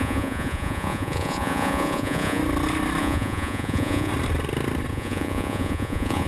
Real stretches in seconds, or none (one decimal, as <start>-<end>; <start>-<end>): 2.4-3.0; 4.1-4.9